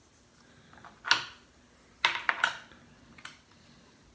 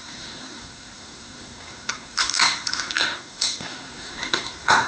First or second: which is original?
first